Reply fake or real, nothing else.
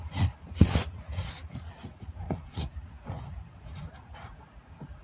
fake